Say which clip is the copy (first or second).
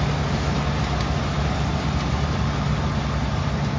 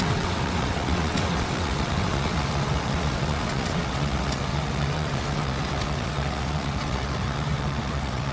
second